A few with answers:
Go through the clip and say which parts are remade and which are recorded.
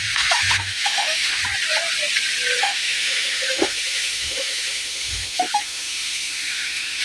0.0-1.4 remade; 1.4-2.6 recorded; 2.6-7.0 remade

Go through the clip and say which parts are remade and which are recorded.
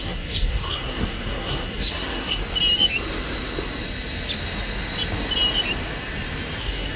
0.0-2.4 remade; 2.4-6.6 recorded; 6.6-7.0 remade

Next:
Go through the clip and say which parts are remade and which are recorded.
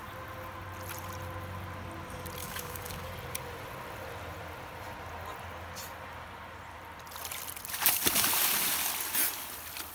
0.0-2.4 recorded; 2.4-3.1 remade; 3.1-9.9 recorded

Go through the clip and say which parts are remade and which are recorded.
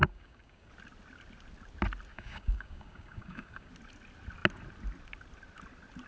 0.0-0.7 remade; 0.7-2.1 recorded; 2.1-3.7 remade; 3.7-6.1 recorded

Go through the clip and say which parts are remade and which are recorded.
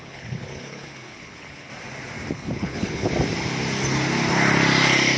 0.0-1.7 remade; 1.7-2.3 recorded; 2.3-3.1 remade; 3.1-5.2 recorded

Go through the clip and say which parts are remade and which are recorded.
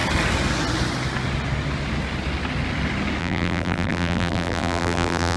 0.0-3.2 recorded; 3.2-5.4 remade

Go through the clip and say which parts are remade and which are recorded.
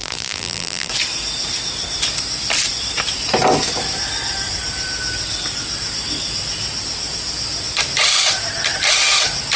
0.0-0.9 remade; 0.9-9.6 recorded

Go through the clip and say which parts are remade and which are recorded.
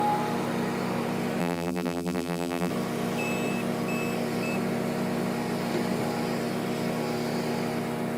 0.0-1.4 recorded; 1.4-2.7 remade; 2.7-8.2 recorded